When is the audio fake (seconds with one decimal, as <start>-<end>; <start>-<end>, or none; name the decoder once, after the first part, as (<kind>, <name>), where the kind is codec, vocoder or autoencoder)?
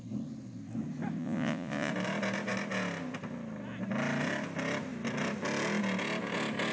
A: 1.2-1.9 (vocoder, Vocos)